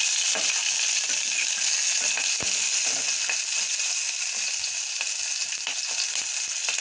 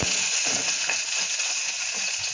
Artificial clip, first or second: second